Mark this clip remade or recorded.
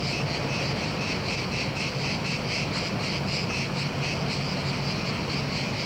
recorded